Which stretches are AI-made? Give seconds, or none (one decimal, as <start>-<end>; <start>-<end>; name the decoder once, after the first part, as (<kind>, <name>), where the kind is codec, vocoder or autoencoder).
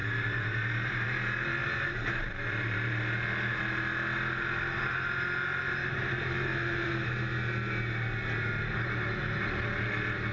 0.0-2.9 (vocoder, BigVGAN v2); 5.8-6.9